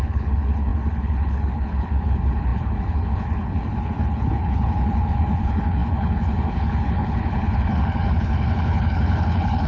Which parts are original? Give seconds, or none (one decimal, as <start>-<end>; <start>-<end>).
none